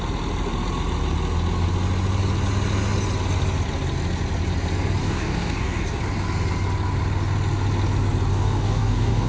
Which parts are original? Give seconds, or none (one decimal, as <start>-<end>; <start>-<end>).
0.0-5.0; 6.0-8.3